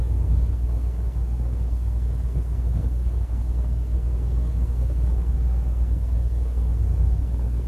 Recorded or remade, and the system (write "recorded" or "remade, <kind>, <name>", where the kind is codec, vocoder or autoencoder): remade, codec, SNAC